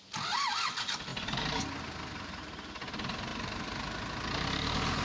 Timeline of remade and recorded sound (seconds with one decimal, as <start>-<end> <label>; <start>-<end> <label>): 0.0-5.0 recorded